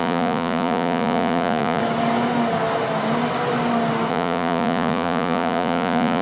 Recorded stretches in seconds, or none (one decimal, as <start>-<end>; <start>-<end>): 1.8-4.1